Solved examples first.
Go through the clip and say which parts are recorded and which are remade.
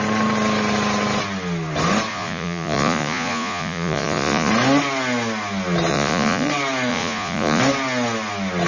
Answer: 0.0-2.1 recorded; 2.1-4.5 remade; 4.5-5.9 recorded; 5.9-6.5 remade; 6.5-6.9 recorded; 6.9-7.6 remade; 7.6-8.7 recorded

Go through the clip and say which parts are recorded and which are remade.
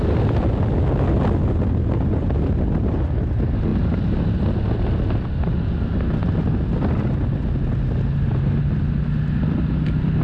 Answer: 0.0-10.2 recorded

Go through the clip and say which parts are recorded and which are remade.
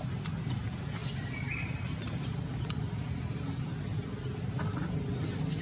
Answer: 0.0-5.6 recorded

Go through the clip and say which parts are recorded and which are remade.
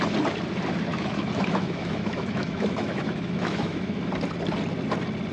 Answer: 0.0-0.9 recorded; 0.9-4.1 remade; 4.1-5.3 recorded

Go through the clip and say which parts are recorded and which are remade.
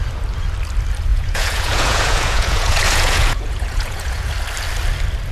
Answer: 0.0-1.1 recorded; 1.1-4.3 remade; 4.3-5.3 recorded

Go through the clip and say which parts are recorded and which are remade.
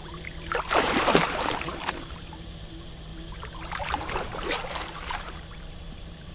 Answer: 0.0-0.6 recorded; 0.6-3.1 remade; 3.1-3.7 recorded; 3.7-6.3 remade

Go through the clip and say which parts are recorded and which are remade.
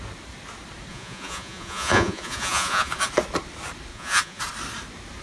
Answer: 0.0-0.9 recorded; 0.9-3.1 remade; 3.1-3.9 recorded; 3.9-4.4 remade; 4.4-5.2 recorded